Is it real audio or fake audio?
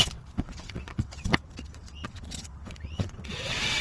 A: fake